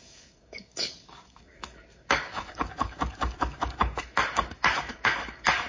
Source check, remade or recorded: remade